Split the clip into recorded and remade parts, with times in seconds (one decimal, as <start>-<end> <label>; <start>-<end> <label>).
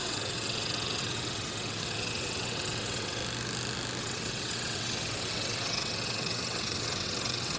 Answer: 0.0-3.2 remade; 3.2-4.0 recorded; 4.0-7.6 remade